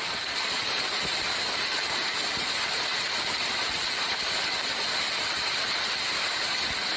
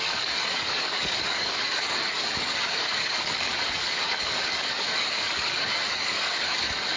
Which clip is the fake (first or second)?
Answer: second